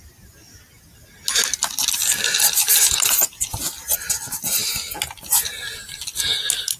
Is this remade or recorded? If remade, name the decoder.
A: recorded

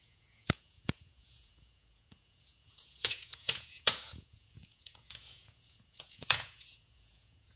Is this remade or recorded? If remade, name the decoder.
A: remade, vocoder, Vocos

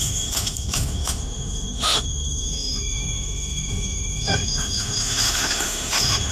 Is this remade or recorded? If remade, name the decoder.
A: remade, autoencoder, DAC-VAE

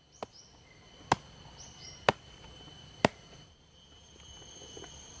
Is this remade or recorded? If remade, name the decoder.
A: recorded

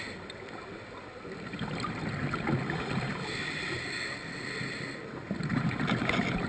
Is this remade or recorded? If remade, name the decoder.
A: recorded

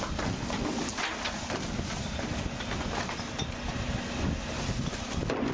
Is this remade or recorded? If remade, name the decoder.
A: recorded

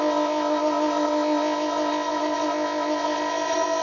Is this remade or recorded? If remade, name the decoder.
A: remade, codec, ZipCodec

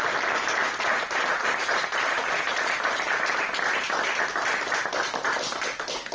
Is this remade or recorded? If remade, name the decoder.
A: recorded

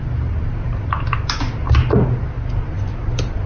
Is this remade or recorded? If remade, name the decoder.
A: recorded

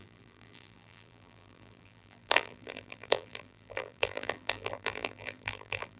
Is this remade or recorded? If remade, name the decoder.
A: remade, vocoder, BigVGAN v2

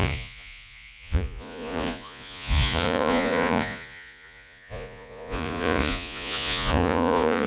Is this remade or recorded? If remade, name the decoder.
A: remade, vocoder, Vocos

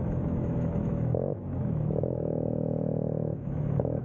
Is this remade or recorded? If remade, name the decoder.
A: remade, autoencoder, DAC-VAE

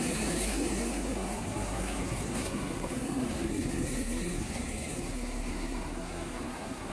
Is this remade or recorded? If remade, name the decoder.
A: remade, codec, SNAC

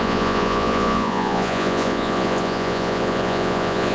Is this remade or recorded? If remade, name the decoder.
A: remade, vocoder, Vocos